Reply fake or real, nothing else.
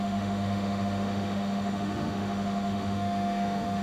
fake